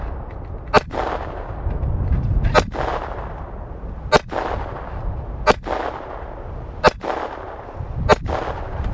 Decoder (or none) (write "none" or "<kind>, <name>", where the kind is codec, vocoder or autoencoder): none